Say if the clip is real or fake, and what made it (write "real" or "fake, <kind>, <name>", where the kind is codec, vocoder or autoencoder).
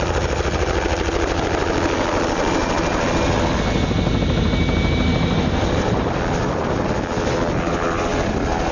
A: real